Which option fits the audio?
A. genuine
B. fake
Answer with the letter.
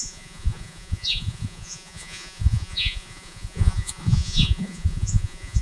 B